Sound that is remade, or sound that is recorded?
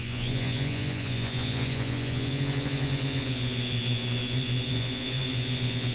remade